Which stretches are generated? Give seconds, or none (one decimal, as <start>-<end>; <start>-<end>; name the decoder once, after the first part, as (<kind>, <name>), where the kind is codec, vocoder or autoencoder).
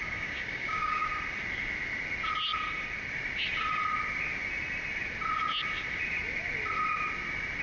0.0-1.1 (codec, DAC)